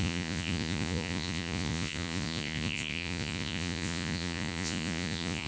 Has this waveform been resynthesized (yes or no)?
yes